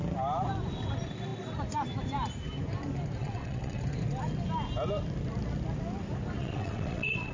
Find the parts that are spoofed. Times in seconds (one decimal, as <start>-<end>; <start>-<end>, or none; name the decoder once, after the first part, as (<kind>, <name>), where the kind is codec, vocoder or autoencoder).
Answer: 3.2-3.8 (vocoder, WaveNeXt); 6.4-7.3